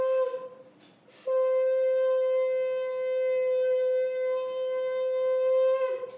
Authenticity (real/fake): real